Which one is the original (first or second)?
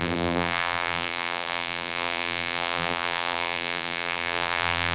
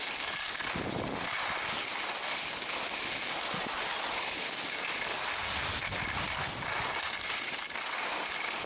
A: second